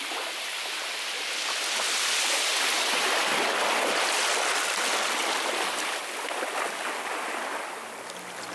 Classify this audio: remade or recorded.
recorded